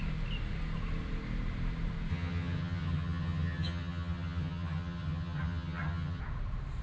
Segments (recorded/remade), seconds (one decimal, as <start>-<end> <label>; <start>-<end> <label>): 0.0-2.1 recorded; 2.1-6.2 remade; 6.2-6.8 recorded